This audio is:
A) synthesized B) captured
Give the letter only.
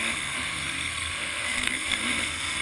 A